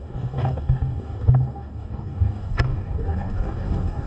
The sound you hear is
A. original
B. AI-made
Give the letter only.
B